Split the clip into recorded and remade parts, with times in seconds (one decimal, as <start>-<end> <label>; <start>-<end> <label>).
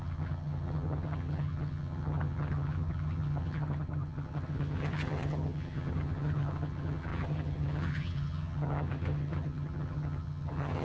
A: 0.0-10.8 remade